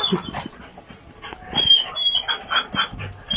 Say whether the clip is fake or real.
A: real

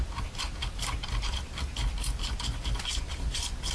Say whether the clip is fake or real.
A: real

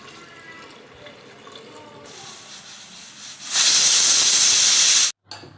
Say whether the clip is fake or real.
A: real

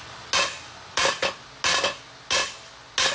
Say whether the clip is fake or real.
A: real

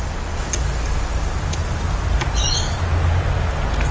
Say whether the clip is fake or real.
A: real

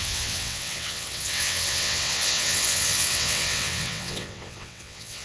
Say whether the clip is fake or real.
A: fake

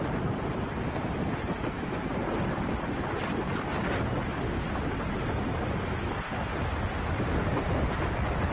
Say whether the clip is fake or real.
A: real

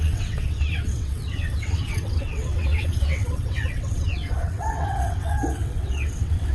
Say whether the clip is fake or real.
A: fake